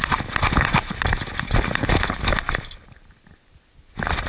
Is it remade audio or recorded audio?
recorded